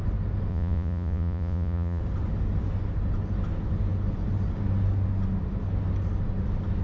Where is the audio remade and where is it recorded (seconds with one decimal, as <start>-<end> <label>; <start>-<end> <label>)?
0.0-0.5 recorded; 0.5-2.0 remade; 2.0-6.8 recorded